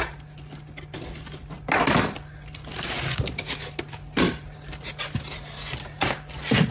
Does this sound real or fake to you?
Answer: real